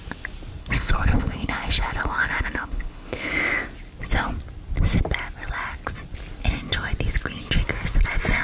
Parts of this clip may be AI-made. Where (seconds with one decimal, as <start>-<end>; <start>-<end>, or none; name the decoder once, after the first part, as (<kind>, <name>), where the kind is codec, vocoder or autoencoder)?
0.6-3.3 (codec, HILCodec)